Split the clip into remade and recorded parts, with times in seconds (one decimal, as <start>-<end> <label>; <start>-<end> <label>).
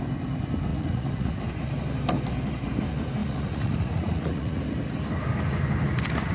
0.0-0.7 recorded; 0.7-1.4 remade; 1.4-3.2 recorded; 3.2-4.6 remade; 4.6-6.3 recorded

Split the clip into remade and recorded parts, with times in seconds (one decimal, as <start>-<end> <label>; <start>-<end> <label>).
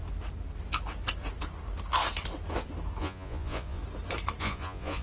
0.0-3.0 recorded; 3.0-3.8 remade; 3.8-4.4 recorded; 4.4-5.0 remade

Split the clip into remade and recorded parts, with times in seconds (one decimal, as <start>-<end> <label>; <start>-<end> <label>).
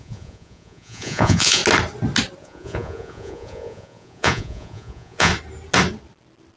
0.0-1.6 remade; 1.6-2.4 recorded; 2.4-5.3 remade; 5.3-6.6 recorded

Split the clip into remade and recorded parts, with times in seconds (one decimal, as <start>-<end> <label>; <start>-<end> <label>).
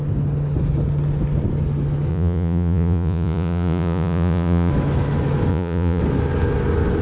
0.0-2.1 recorded; 2.1-4.7 remade; 4.7-5.5 recorded; 5.5-6.0 remade; 6.0-7.0 recorded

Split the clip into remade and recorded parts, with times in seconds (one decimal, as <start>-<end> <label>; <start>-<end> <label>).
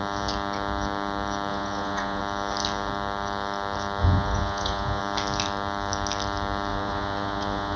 0.0-1.5 recorded; 1.5-2.2 remade; 2.2-4.0 recorded; 4.0-5.0 remade; 5.0-6.7 recorded; 6.7-7.8 remade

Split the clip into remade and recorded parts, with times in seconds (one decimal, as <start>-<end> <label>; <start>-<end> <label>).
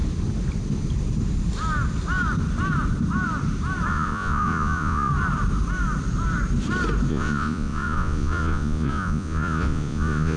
0.0-3.9 recorded; 3.9-5.1 remade; 5.1-7.1 recorded; 7.1-10.4 remade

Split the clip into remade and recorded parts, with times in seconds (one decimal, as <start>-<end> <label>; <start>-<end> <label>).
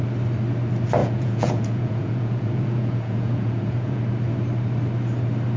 0.0-1.0 recorded; 1.0-4.0 remade; 4.0-5.6 recorded